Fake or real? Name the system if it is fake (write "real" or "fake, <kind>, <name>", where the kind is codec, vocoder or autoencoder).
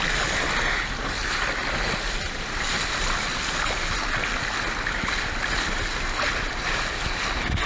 real